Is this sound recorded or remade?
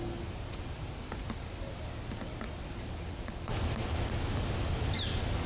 recorded